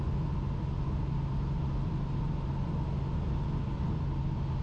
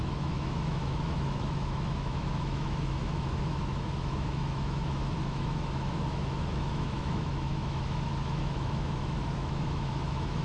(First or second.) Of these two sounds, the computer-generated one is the second